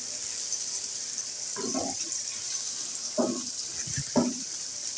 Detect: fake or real real